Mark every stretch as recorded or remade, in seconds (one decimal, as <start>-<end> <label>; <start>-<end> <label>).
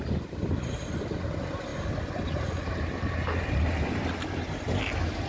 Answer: 0.0-5.3 recorded